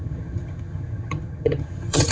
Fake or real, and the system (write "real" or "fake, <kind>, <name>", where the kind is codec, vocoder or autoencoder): fake, vocoder, HiFi-GAN